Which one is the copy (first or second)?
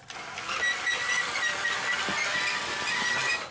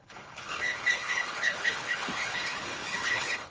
second